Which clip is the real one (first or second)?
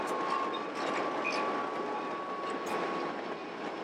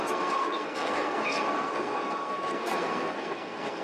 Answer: first